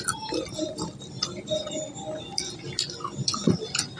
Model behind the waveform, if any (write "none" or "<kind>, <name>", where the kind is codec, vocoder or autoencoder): none